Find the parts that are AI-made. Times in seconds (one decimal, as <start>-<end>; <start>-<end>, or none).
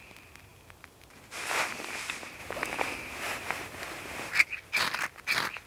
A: none